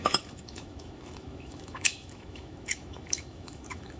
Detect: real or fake fake